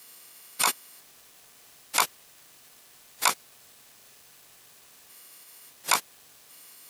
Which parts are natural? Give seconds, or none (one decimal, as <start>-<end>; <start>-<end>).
1.0-5.1; 5.7-6.5